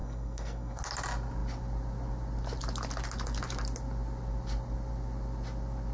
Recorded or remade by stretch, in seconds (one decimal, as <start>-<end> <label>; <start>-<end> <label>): 0.0-0.8 remade; 0.8-5.9 recorded